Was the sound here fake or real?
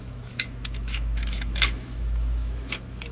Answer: fake